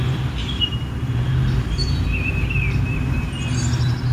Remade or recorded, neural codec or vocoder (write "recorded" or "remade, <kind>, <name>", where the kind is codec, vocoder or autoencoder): remade, vocoder, BigVGAN v2